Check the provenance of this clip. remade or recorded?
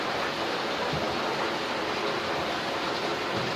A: recorded